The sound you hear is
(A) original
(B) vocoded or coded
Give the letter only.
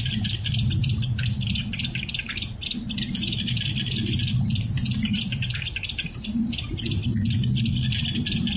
A